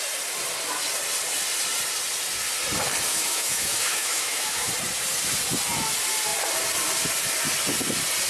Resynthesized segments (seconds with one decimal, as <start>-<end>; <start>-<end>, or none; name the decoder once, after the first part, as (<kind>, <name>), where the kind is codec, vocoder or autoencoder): 3.1-4.7 (autoencoder, DAC-VAE)